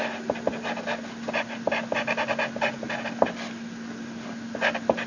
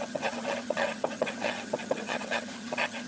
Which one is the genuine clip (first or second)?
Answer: first